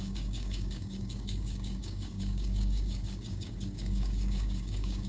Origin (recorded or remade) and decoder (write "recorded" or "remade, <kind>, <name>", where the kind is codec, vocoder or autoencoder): remade, codec, DAC